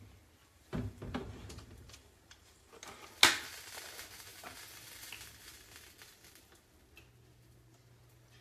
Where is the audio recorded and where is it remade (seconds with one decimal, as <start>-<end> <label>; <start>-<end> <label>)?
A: 0.0-0.4 recorded; 0.4-2.7 remade; 2.7-8.4 recorded

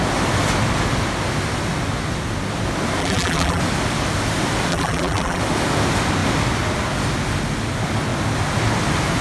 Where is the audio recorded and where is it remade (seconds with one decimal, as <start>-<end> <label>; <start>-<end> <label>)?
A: 0.0-3.0 recorded; 3.0-3.6 remade; 3.6-4.7 recorded; 4.7-5.4 remade; 5.4-9.2 recorded

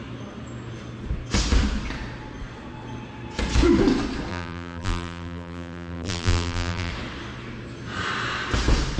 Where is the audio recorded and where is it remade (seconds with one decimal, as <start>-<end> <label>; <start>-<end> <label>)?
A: 0.0-4.3 recorded; 4.3-6.9 remade; 6.9-9.0 recorded